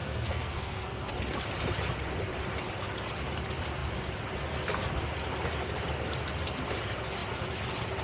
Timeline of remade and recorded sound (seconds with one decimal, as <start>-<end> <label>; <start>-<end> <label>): 0.0-1.1 remade; 1.1-8.0 recorded

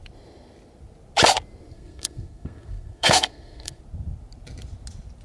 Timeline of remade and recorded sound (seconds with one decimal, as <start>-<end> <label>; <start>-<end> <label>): 0.0-1.7 recorded; 1.7-3.8 remade; 3.8-5.2 recorded

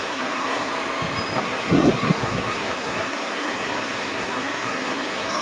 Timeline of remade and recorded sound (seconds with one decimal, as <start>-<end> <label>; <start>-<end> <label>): 0.0-0.7 remade; 0.7-1.4 recorded; 1.4-5.4 remade

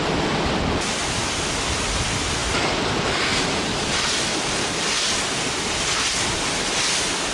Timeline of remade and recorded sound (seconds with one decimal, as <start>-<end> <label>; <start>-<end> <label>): 0.0-7.3 recorded

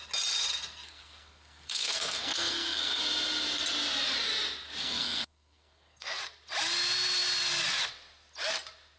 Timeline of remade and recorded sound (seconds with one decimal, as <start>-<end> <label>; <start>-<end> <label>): 0.0-0.7 recorded; 0.7-3.0 remade; 3.0-4.8 recorded; 4.8-6.2 remade; 6.2-9.0 recorded

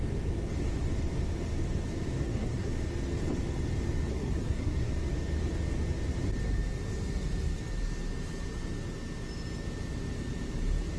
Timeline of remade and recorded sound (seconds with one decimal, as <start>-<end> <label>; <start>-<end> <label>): 0.0-2.2 recorded; 2.2-2.7 remade; 2.7-4.1 recorded; 4.1-4.9 remade; 4.9-11.0 recorded